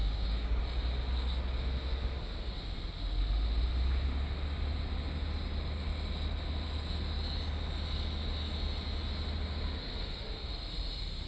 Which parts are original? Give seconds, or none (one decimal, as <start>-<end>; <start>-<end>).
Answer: 0.6-11.3